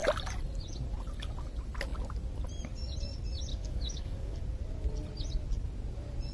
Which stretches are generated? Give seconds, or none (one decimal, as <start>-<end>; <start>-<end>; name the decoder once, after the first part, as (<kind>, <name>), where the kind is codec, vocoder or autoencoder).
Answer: 3.5-4.4 (codec, DAC)